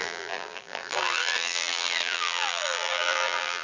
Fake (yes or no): yes